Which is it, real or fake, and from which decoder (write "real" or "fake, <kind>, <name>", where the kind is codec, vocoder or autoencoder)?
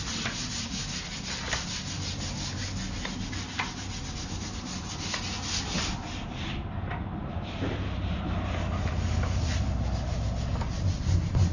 real